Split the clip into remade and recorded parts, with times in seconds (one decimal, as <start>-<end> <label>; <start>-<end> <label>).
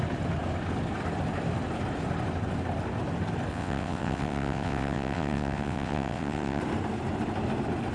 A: 0.0-3.5 recorded; 3.5-6.6 remade; 6.6-7.9 recorded